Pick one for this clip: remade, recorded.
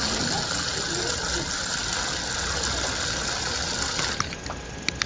recorded